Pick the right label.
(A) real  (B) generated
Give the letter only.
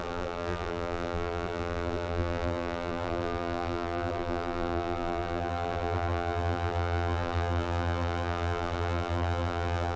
B